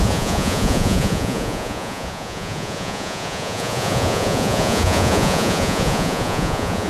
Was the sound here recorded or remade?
remade